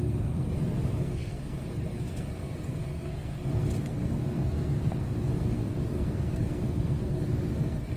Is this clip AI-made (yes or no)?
yes